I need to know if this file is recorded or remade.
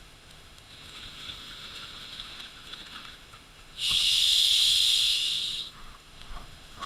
remade